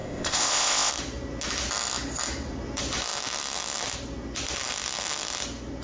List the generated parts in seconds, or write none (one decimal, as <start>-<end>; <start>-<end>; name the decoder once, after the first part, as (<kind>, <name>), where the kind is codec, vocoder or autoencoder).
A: 0.0-0.9 (codec, ZipCodec)